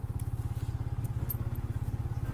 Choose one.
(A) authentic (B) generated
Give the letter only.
A